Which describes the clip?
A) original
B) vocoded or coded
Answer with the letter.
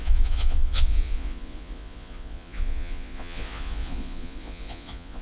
B